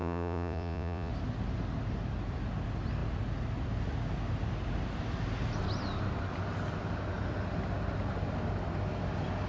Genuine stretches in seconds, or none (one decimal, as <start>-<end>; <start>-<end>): 1.1-9.5